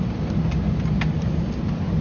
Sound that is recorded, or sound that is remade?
recorded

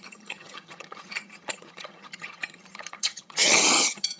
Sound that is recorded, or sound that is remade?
remade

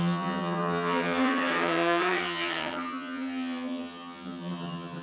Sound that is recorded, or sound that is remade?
remade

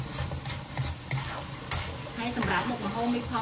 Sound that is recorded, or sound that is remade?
recorded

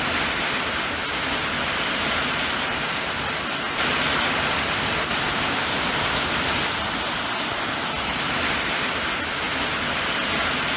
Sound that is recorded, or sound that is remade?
recorded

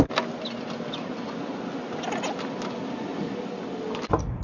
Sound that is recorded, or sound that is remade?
recorded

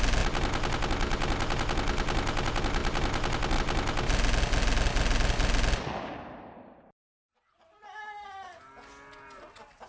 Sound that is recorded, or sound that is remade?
recorded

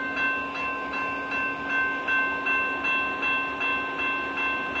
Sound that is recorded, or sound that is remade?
recorded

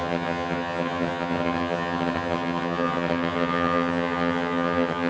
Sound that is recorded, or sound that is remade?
remade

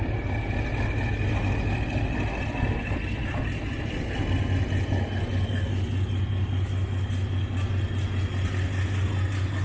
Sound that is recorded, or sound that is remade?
recorded